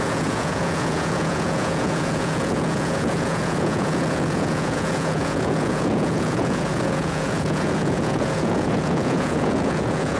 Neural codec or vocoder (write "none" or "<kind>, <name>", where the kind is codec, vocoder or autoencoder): vocoder, Vocos